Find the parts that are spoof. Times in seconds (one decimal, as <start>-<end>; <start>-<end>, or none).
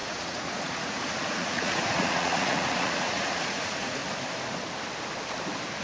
0.0-4.0